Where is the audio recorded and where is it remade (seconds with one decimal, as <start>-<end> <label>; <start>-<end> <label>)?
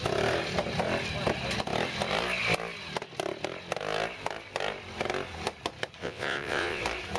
0.0-6.0 recorded; 6.0-6.8 remade; 6.8-7.2 recorded